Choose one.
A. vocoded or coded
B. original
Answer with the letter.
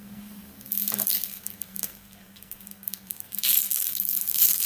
A